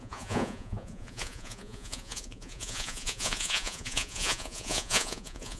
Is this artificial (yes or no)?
yes